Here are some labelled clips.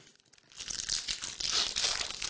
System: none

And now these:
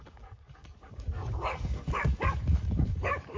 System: codec, DAC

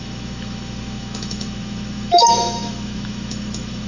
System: autoencoder, DAC-VAE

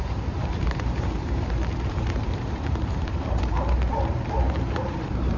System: vocoder, BigVGAN v2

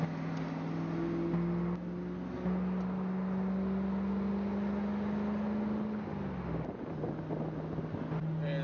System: none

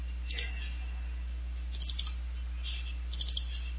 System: none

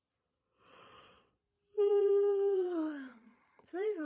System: vocoder, Vocos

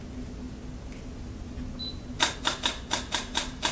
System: none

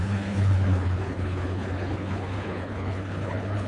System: codec, HILCodec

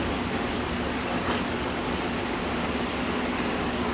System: codec, DAC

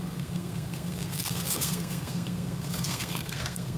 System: codec, SNAC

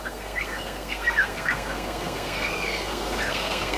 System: codec, SNAC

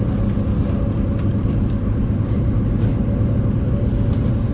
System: none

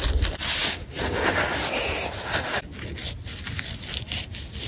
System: none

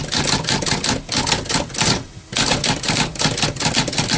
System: none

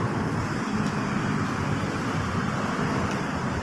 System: none